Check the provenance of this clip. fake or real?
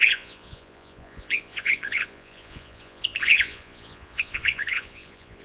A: fake